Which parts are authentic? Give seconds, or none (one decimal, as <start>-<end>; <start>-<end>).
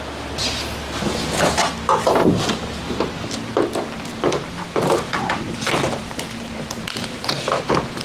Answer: 0.0-4.1; 7.2-8.0